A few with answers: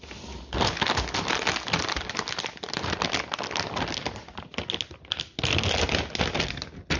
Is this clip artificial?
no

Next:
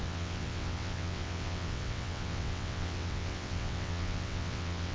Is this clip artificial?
yes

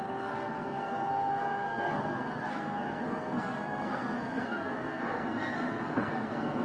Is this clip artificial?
yes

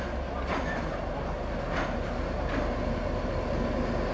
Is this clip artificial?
no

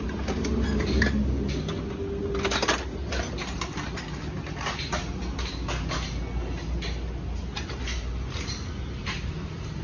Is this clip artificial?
no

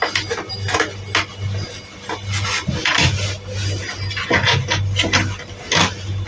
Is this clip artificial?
no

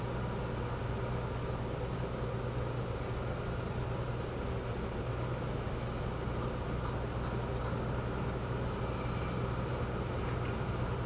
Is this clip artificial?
no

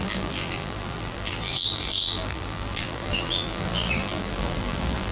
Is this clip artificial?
yes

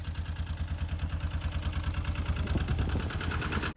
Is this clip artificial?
no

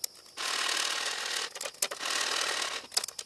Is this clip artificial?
no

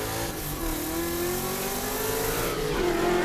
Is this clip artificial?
no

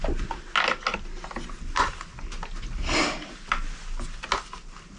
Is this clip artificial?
no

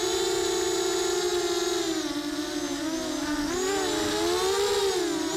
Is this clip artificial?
no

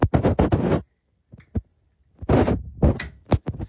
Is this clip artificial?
no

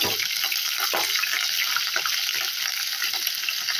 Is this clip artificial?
no